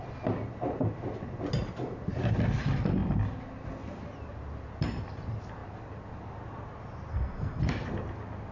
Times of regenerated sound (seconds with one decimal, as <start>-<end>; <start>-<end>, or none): 7.1-7.6